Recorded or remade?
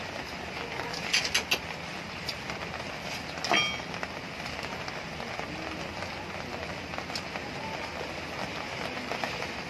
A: recorded